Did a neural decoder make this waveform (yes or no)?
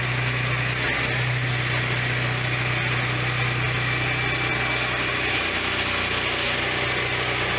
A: no